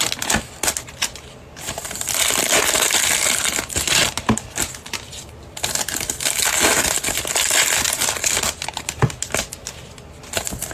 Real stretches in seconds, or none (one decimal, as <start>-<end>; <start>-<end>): 0.0-10.7